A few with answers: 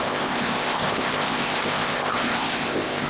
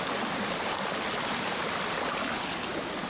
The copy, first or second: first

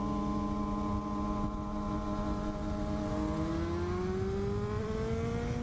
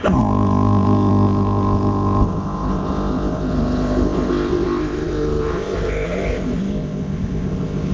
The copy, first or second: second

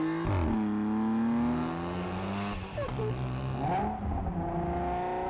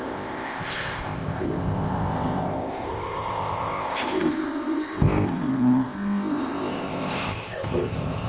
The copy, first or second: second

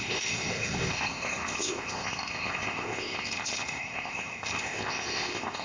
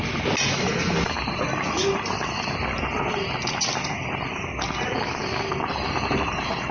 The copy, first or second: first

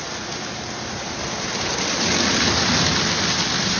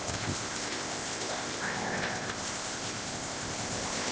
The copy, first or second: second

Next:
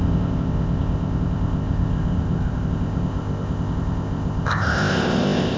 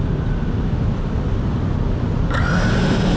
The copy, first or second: first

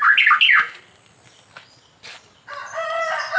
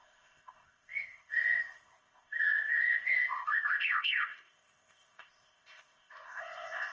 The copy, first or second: second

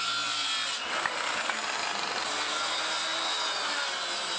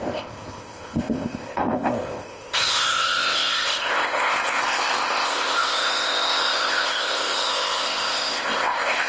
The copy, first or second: second